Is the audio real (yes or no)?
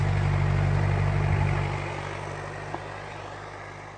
yes